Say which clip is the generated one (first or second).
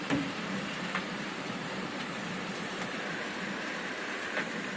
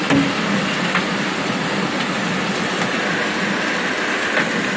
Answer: first